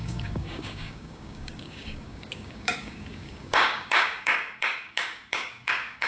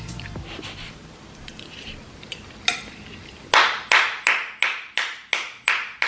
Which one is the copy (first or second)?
first